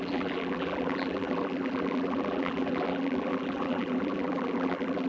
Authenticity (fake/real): fake